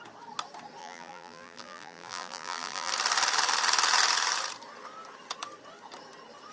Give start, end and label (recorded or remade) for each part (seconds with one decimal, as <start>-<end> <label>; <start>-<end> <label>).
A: 0.0-0.8 recorded; 0.8-2.9 remade; 2.9-6.5 recorded